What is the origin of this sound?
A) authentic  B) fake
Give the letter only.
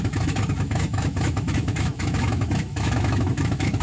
B